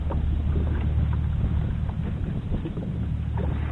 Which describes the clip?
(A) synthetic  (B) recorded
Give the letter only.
B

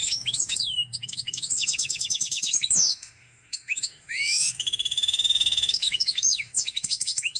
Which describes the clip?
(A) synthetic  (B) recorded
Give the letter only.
A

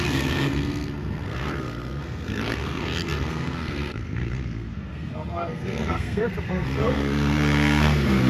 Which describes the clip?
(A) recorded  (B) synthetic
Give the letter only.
B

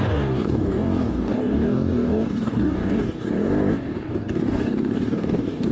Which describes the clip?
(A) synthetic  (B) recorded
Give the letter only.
A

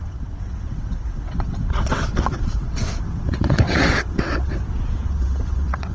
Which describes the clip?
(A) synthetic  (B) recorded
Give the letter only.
A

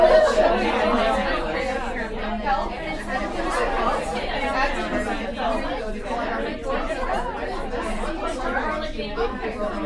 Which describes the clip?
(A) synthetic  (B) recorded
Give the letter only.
B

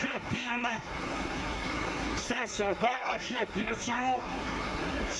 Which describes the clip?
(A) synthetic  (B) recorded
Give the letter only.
A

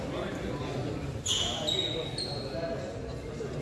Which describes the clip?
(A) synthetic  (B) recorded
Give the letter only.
B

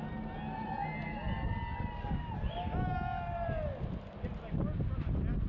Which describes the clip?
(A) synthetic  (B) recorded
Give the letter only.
B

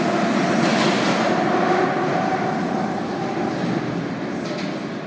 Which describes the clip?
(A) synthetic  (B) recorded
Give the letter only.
B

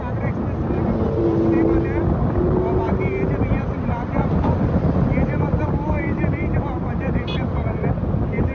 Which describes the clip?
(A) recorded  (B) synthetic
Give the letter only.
A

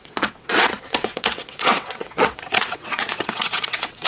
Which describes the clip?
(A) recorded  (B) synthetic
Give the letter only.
B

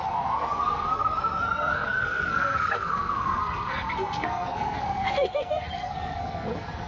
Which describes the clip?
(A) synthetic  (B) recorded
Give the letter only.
A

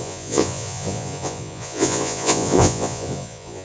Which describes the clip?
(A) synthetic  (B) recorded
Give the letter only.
A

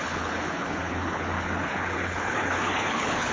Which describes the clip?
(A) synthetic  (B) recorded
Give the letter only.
A